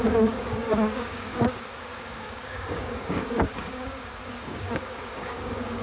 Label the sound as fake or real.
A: fake